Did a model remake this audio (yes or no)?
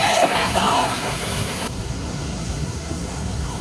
yes